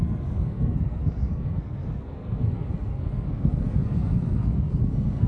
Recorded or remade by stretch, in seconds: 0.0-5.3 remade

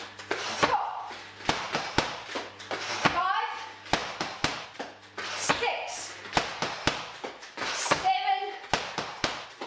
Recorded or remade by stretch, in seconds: 0.0-9.7 recorded